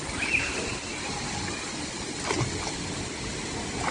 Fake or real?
real